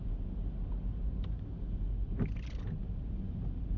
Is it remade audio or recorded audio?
recorded